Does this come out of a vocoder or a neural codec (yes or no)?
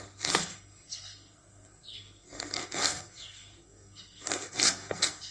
yes